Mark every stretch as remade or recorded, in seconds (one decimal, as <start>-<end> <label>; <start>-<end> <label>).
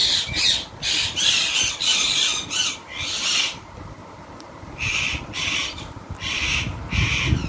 0.0-7.5 recorded